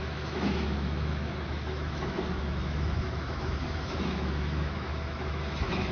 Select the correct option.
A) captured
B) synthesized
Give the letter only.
B